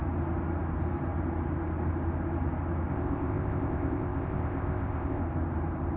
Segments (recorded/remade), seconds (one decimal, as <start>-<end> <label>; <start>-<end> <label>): 0.0-2.9 recorded; 2.9-5.2 remade; 5.2-6.0 recorded